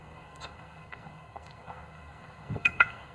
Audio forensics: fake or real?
fake